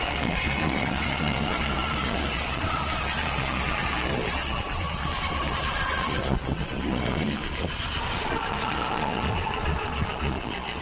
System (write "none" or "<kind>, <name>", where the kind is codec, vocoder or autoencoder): vocoder, Vocos